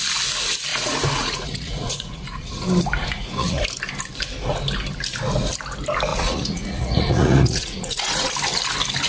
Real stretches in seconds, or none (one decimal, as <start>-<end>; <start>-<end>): 0.0-0.7; 2.5-3.0; 3.6-6.1; 8.3-9.1